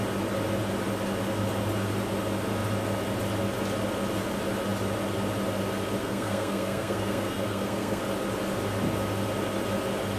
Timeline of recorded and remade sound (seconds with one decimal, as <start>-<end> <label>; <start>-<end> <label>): 0.0-6.0 recorded; 6.0-8.0 remade; 8.0-10.2 recorded